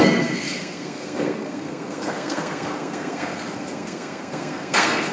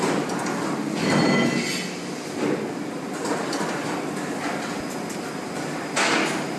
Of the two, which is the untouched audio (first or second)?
second